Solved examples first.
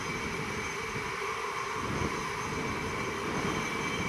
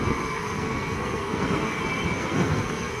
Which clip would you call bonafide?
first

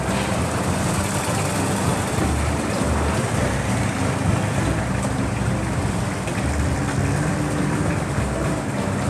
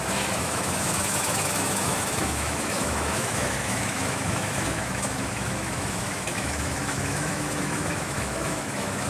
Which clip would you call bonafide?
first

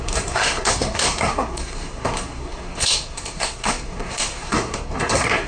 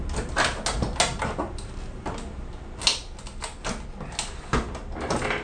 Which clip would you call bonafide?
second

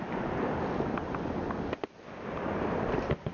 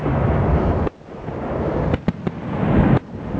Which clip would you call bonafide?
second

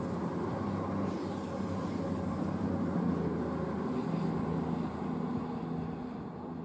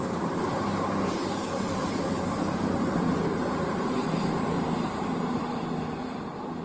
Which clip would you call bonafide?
first